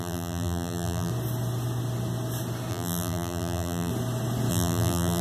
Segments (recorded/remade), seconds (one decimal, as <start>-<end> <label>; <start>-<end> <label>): 0.0-1.1 remade; 1.1-2.7 recorded; 2.7-3.9 remade; 3.9-4.5 recorded; 4.5-5.2 remade